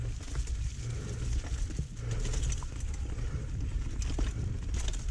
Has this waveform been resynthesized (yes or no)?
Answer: no